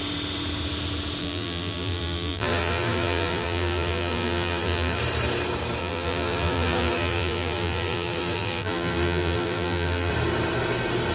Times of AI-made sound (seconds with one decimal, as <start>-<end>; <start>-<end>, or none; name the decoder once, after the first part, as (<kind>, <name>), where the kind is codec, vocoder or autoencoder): 1.2-5.0 (vocoder, BigVGAN v2); 5.8-10.1